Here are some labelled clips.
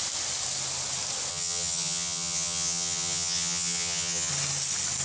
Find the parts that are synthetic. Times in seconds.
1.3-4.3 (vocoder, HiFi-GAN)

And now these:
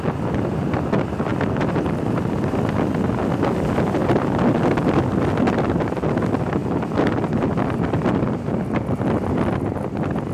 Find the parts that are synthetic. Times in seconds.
none